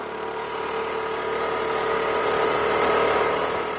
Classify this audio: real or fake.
real